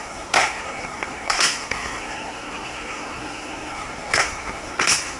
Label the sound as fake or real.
fake